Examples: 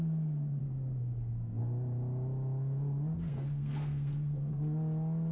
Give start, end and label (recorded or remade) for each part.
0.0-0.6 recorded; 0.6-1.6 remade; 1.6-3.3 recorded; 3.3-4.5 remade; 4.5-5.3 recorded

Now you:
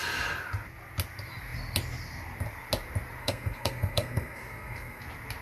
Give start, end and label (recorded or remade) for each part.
0.0-3.2 recorded; 3.2-5.0 remade; 5.0-5.4 recorded

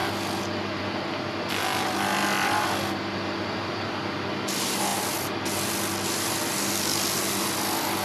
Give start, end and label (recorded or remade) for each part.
0.0-8.0 recorded

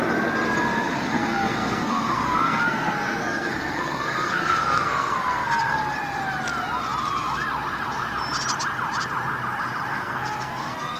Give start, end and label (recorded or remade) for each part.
0.0-0.9 recorded; 0.9-5.8 remade; 5.8-9.9 recorded; 9.9-11.0 remade